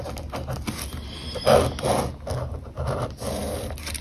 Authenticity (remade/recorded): recorded